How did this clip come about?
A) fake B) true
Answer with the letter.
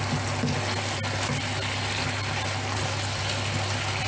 B